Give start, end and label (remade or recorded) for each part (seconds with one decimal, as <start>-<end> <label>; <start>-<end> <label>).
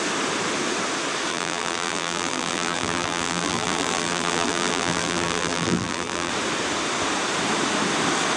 0.0-1.3 recorded; 1.3-6.3 remade; 6.3-8.4 recorded